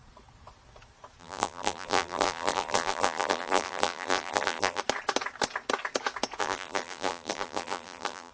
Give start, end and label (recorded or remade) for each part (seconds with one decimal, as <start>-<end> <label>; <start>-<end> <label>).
0.0-1.2 recorded; 1.2-4.8 remade; 4.8-6.4 recorded; 6.4-8.3 remade

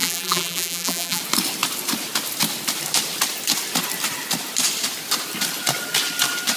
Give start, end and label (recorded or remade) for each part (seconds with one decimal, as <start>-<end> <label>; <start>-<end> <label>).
0.0-1.2 remade; 1.2-6.6 recorded

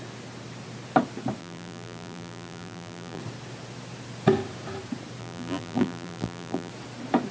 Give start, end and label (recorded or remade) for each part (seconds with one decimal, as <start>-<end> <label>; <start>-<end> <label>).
0.0-1.4 recorded; 1.4-3.2 remade; 3.2-5.2 recorded; 5.2-6.7 remade; 6.7-7.3 recorded